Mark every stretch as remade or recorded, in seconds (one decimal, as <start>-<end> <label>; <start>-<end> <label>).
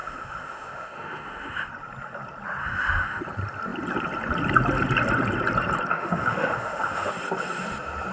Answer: 0.0-1.7 remade; 1.7-2.6 recorded; 2.6-3.2 remade; 3.2-5.9 recorded; 5.9-7.1 remade; 7.1-8.1 recorded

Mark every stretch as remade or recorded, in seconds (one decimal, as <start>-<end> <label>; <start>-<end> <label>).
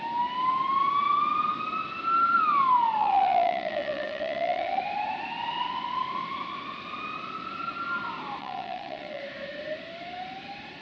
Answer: 0.0-3.0 recorded; 3.0-4.8 remade; 4.8-8.4 recorded; 8.4-9.2 remade; 9.2-10.8 recorded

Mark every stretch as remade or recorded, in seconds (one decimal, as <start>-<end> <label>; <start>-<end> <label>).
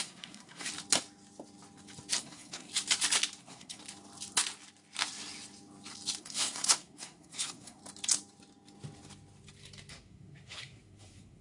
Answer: 0.0-0.7 remade; 0.7-2.2 recorded; 2.2-2.7 remade; 2.7-3.4 recorded; 3.4-3.8 remade; 3.8-6.2 recorded; 6.2-7.8 remade; 7.8-9.9 recorded; 9.9-11.4 remade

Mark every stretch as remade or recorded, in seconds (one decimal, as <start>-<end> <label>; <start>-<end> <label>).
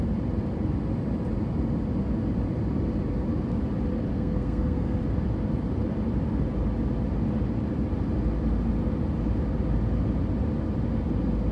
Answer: 0.0-4.1 recorded; 4.1-5.0 remade; 5.0-11.5 recorded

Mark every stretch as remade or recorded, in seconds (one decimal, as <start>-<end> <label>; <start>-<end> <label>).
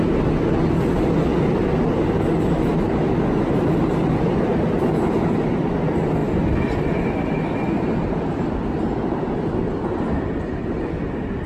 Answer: 0.0-11.5 recorded